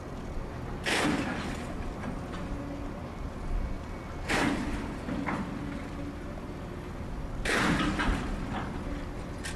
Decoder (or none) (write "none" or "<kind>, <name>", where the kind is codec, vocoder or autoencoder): none